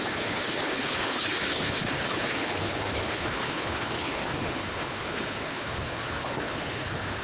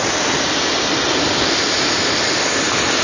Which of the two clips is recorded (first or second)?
second